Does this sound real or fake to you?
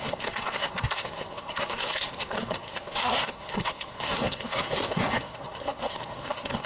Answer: fake